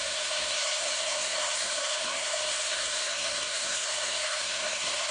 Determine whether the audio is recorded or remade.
remade